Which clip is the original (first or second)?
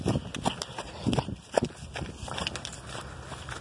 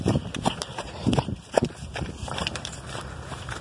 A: first